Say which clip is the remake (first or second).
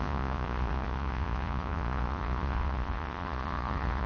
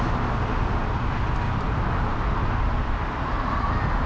first